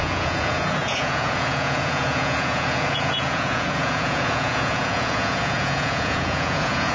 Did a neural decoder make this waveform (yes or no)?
yes